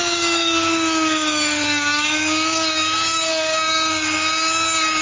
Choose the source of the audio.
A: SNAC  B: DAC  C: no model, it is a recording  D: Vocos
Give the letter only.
B